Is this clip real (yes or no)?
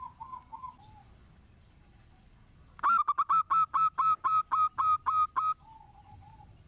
yes